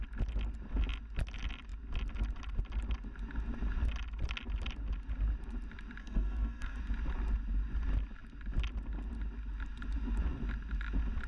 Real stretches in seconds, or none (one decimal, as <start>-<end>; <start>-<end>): 0.0-6.0; 6.8-11.3